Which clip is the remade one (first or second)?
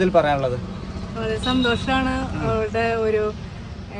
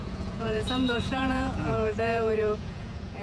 second